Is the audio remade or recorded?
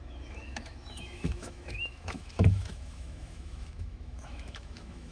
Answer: remade